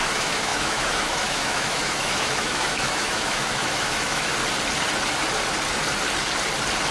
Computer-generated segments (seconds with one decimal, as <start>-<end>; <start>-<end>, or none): 0.0-4.3